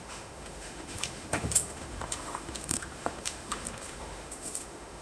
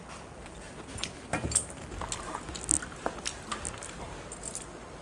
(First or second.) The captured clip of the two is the second